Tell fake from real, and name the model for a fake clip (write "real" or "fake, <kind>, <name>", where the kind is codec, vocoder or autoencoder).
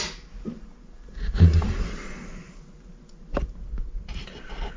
real